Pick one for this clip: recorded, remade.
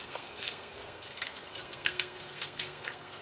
remade